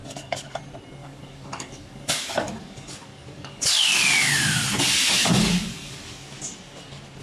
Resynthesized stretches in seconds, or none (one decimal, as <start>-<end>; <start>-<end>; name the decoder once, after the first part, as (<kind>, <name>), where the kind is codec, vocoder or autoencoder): 0.0-0.6 (codec, DAC); 1.0-4.3; 5.2-6.4